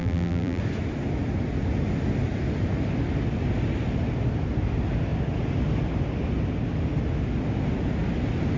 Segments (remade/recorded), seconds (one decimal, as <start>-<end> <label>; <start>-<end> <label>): 0.0-0.6 remade; 0.6-8.6 recorded